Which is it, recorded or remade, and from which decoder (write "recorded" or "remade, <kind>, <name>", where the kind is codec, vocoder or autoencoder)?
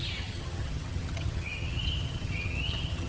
remade, vocoder, HiFi-GAN